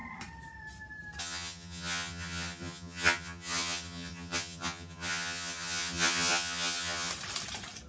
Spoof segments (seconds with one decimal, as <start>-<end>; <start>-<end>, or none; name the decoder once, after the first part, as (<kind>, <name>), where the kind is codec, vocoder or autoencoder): 1.2-7.1 (vocoder, HiFi-GAN)